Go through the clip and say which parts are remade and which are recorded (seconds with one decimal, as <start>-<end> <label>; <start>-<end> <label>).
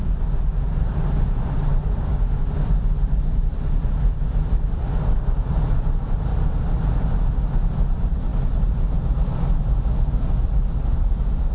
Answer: 0.0-6.3 remade; 6.3-7.9 recorded; 7.9-8.3 remade; 8.3-10.1 recorded; 10.1-11.5 remade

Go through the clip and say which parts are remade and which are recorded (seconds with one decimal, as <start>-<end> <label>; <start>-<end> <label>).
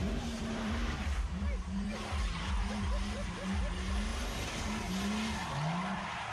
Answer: 0.0-3.6 remade; 3.6-4.1 recorded; 4.1-4.6 remade; 4.6-6.3 recorded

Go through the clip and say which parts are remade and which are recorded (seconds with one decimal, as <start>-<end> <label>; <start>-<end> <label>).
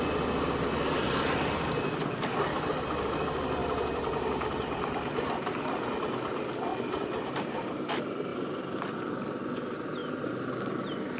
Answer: 0.0-11.2 recorded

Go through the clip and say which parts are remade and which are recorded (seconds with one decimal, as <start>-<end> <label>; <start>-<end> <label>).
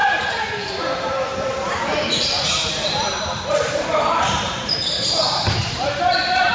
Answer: 0.0-6.5 remade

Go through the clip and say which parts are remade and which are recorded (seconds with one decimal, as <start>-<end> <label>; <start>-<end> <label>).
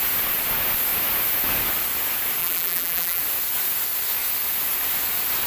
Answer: 0.0-2.4 recorded; 2.4-3.2 remade; 3.2-5.5 recorded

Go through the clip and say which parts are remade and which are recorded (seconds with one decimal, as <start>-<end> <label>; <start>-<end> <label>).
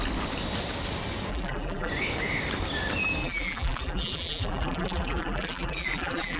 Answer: 0.0-1.3 recorded; 1.3-1.9 remade; 1.9-3.2 recorded; 3.2-6.4 remade